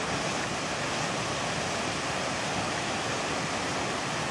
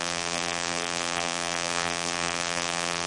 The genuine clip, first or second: first